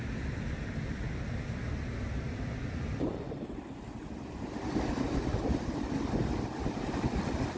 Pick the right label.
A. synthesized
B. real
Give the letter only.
B